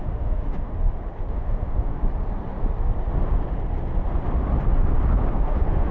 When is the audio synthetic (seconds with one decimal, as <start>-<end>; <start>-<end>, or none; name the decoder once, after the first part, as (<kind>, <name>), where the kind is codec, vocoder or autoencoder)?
0.0-0.7 (autoencoder, DAC-VAE); 1.3-2.0; 5.3-5.9